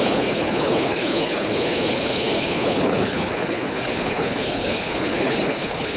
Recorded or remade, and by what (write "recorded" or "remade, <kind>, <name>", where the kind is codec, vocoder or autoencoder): remade, codec, HILCodec